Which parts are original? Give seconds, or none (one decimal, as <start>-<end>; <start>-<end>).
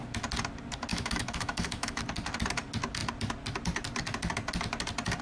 0.0-0.9; 2.0-5.2